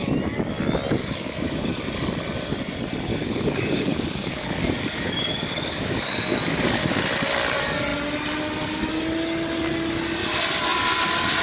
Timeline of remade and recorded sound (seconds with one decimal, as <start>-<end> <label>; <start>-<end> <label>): 0.0-1.0 recorded; 1.0-1.8 remade; 1.8-3.1 recorded; 3.1-7.0 remade; 7.0-11.4 recorded